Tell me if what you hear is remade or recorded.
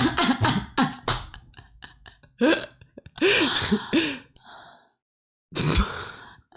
recorded